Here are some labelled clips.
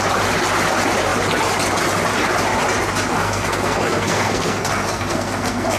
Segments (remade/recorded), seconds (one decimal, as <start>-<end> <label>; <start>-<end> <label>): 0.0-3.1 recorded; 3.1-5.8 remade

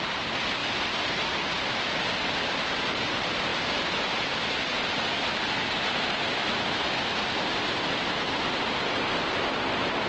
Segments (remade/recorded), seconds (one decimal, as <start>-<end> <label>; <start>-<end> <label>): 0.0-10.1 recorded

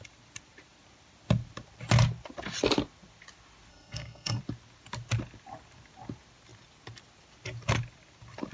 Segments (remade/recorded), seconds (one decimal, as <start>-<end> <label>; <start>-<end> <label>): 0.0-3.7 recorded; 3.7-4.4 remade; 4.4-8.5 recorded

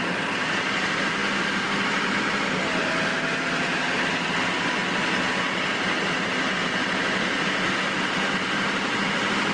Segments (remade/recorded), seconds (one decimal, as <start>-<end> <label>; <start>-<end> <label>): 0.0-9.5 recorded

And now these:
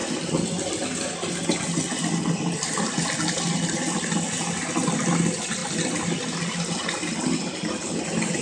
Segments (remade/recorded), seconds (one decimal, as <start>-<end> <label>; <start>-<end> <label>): 0.0-8.4 recorded

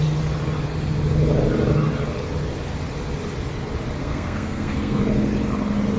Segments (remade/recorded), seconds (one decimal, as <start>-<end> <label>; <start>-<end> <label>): 0.0-4.0 recorded; 4.0-5.0 remade; 5.0-6.0 recorded

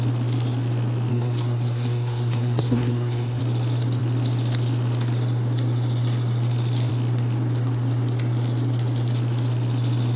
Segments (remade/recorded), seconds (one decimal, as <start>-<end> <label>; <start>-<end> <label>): 0.0-1.1 recorded; 1.1-3.4 remade; 3.4-10.2 recorded